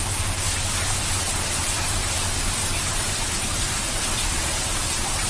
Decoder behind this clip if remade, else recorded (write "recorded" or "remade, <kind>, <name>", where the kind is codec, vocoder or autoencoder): recorded